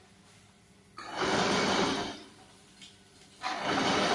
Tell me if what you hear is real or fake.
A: real